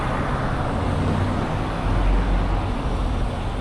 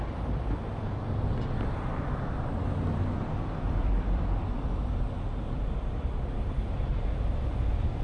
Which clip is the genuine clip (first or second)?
first